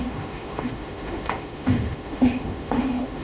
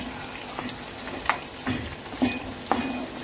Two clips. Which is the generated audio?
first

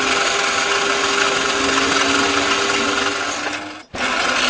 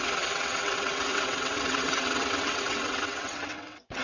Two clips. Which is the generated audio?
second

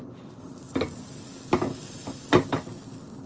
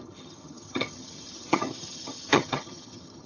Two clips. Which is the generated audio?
second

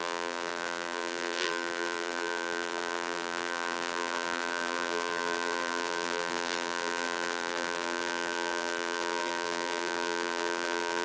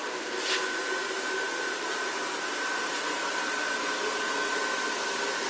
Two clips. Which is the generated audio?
first